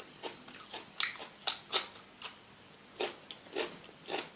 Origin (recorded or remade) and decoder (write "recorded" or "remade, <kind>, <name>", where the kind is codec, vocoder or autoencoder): recorded